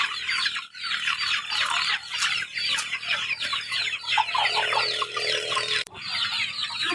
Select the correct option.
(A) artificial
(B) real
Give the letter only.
A